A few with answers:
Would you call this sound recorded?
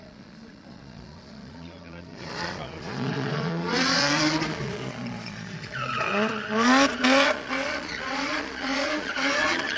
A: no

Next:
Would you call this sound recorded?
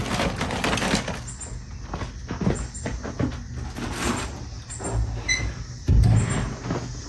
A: yes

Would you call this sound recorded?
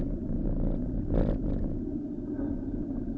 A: no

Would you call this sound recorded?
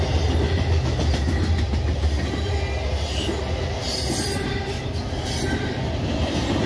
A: yes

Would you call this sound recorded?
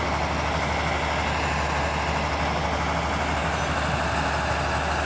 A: yes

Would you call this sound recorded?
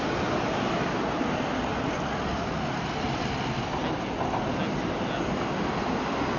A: yes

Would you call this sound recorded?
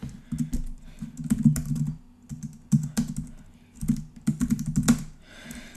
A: yes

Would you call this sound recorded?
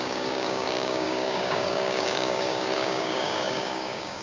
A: no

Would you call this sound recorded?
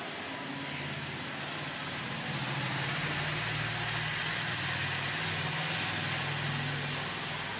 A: yes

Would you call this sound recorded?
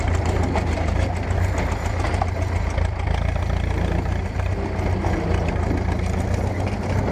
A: yes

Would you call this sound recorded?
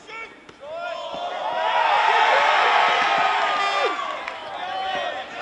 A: yes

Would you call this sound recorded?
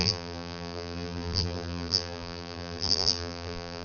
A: no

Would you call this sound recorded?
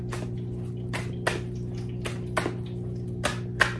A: yes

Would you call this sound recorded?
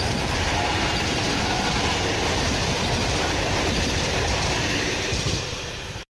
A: no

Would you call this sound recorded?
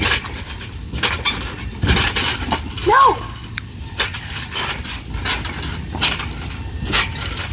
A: yes